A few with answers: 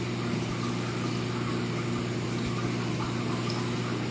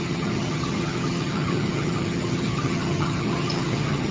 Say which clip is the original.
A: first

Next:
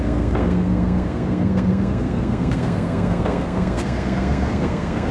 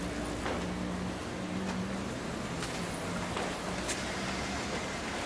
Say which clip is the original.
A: second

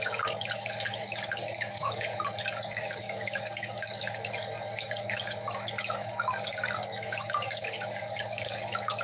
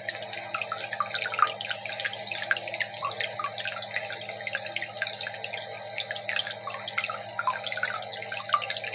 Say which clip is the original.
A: second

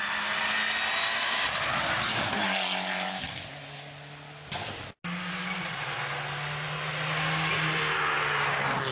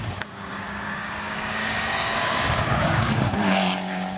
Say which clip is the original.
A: first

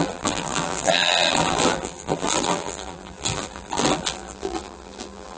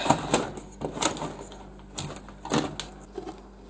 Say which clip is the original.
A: second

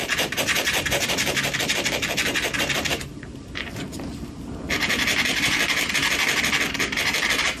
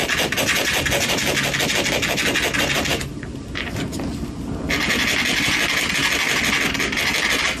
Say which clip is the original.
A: second